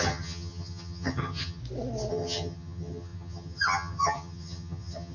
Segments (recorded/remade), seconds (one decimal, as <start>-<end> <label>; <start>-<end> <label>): 0.0-1.6 remade; 1.6-2.1 recorded; 2.1-5.1 remade